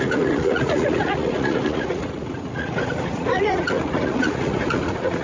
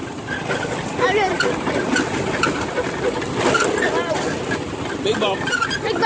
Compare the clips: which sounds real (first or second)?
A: second